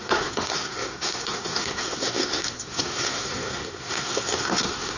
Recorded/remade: remade